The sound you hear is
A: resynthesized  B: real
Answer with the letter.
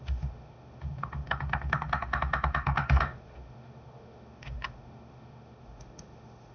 A